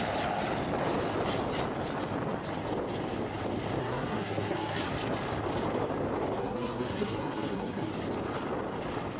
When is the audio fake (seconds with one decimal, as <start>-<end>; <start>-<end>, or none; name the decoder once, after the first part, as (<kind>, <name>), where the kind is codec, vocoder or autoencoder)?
3.8-4.9 (codec, SNAC); 6.4-7.9